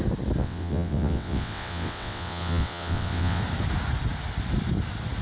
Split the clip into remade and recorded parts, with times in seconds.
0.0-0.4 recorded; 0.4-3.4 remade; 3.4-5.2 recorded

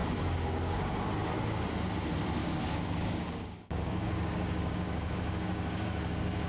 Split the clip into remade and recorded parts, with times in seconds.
0.0-1.0 remade; 1.0-2.4 recorded; 2.4-6.5 remade

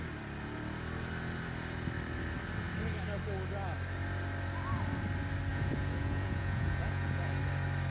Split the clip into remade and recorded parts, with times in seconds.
0.0-5.5 recorded; 5.5-7.4 remade; 7.4-7.9 recorded

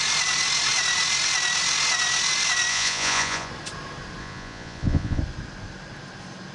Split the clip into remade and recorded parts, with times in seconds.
0.0-2.7 recorded; 2.7-3.5 remade; 3.5-4.2 recorded; 4.2-5.2 remade; 5.2-6.5 recorded

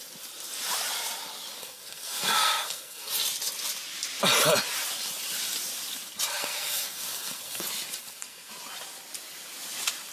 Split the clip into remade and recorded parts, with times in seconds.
0.0-1.6 recorded; 1.6-3.1 remade; 3.1-6.3 recorded; 6.3-7.6 remade; 7.6-8.0 recorded; 8.0-8.5 remade; 8.5-10.1 recorded

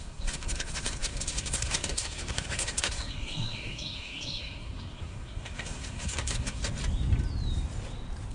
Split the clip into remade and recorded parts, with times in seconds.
0.0-6.6 remade; 6.6-8.3 recorded

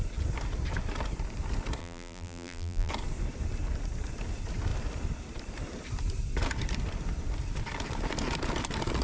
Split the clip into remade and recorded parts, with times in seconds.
0.0-1.8 recorded; 1.8-2.9 remade; 2.9-9.0 recorded

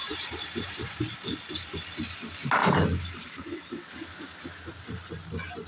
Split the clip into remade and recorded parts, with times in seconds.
0.0-1.0 remade; 1.0-2.6 recorded; 2.6-3.5 remade; 3.5-5.7 recorded